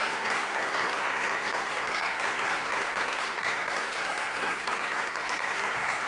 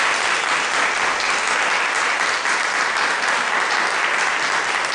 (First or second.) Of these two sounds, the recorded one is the second